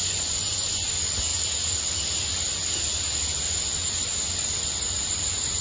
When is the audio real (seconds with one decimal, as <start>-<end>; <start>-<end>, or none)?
0.9-5.6